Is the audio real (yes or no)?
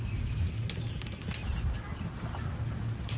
yes